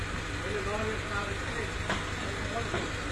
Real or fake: real